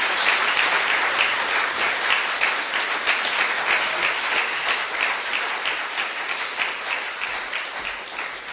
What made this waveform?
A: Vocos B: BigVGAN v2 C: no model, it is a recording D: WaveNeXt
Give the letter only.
C